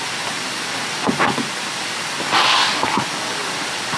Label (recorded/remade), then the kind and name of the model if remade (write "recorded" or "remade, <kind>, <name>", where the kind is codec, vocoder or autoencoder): recorded